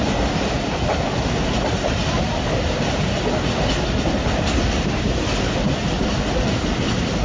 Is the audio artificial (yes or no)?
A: no